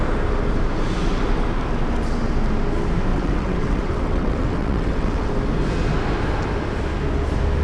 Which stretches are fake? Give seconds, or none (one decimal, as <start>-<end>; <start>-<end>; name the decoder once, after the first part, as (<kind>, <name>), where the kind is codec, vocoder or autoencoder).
3.1-5.3 (vocoder, WaveNeXt)